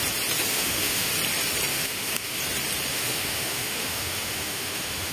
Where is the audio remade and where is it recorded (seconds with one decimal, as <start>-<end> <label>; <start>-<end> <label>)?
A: 0.0-0.5 recorded; 0.5-1.1 remade; 1.1-1.7 recorded; 1.7-2.4 remade; 2.4-2.9 recorded; 2.9-5.1 remade